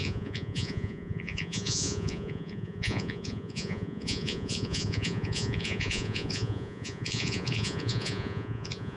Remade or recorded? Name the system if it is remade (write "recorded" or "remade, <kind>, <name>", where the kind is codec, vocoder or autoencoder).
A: remade, vocoder, Vocos